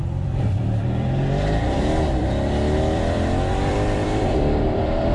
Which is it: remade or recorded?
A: remade